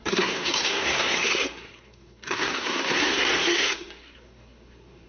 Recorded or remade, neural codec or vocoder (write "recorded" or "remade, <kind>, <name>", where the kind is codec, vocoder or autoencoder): remade, codec, SNAC